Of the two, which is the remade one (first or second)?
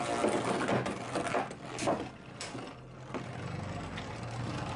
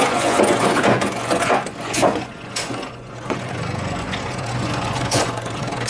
second